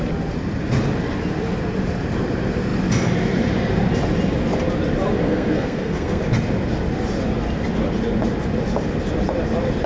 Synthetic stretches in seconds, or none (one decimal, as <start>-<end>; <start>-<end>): 5.2-6.2